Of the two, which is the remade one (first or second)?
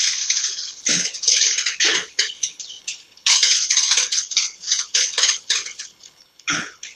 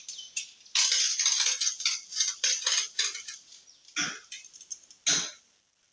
first